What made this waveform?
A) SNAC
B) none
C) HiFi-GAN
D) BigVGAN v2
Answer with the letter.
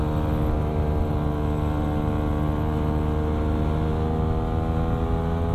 B